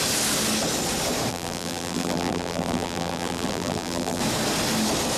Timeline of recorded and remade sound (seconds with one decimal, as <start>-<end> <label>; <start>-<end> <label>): 0.0-1.3 recorded; 1.3-4.2 remade; 4.2-5.2 recorded